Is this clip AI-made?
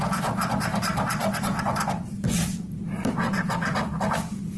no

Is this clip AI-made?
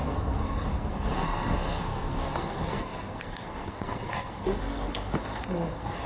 yes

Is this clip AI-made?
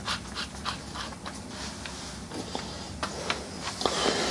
no